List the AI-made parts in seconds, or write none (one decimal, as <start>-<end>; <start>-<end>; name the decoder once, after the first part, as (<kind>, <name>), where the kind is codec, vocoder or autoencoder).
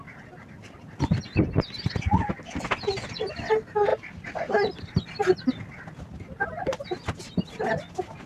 none